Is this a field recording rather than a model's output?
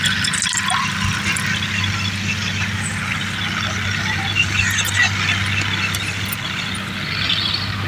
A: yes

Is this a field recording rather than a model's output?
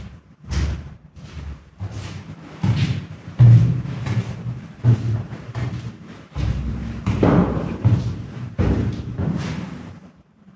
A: no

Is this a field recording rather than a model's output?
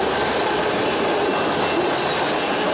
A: yes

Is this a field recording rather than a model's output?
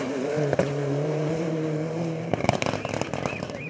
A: no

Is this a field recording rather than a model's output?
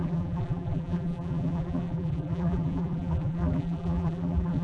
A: no